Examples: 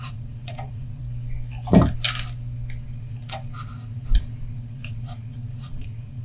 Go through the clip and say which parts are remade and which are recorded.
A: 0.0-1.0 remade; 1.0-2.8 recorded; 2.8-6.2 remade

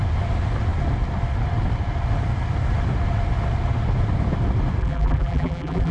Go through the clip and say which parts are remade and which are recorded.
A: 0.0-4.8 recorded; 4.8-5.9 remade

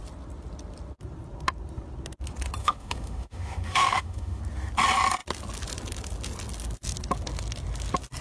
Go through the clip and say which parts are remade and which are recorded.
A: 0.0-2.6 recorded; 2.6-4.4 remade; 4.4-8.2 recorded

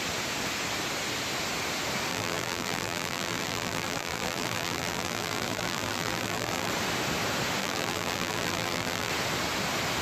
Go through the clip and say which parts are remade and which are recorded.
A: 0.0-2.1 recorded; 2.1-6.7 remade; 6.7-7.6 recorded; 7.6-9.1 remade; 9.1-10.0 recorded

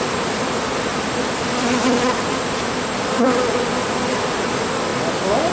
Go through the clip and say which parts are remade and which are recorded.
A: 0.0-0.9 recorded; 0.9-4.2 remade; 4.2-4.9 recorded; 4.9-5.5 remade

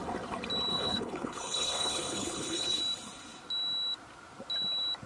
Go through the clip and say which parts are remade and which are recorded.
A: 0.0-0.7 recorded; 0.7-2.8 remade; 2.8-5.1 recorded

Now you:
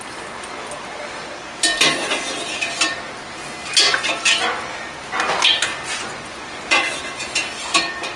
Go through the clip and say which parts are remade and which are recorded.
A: 0.0-5.7 recorded; 5.7-7.0 remade; 7.0-8.2 recorded